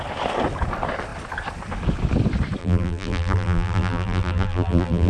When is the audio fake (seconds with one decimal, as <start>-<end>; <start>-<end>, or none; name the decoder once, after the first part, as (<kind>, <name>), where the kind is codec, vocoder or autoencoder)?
2.6-5.1 (vocoder, BigVGAN v2)